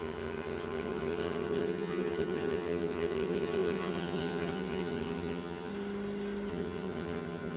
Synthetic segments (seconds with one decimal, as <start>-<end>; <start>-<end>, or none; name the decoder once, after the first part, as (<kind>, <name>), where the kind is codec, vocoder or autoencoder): 0.0-5.7 (vocoder, HiFi-GAN); 6.5-7.6